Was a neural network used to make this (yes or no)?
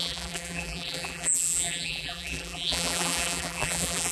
yes